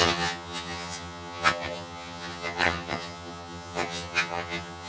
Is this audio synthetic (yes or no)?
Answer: yes